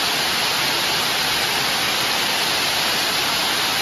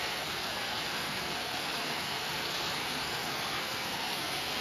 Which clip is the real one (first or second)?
first